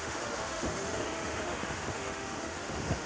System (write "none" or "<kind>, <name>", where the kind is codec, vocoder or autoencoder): autoencoder, DAC-VAE